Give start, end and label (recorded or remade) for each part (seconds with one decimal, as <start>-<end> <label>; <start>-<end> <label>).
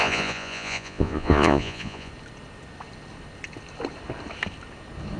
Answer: 0.0-2.1 remade; 2.1-5.2 recorded